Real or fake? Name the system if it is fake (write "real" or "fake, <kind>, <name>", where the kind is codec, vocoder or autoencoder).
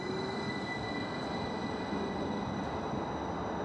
real